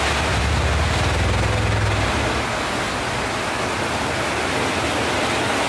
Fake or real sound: real